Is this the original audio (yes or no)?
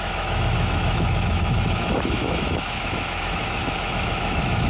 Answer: no